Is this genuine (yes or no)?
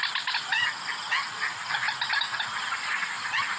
yes